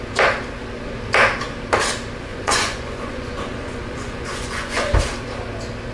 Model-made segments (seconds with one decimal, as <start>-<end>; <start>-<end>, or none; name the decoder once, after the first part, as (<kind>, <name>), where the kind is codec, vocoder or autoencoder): 2.3-5.0 (vocoder, Vocos)